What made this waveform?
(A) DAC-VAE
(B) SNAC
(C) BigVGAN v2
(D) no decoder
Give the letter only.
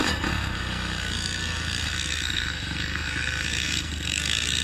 B